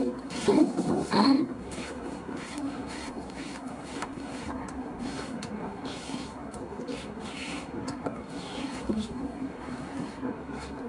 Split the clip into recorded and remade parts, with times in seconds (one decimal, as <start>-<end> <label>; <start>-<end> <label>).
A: 0.0-10.9 remade